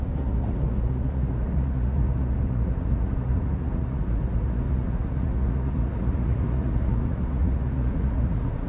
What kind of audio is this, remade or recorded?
remade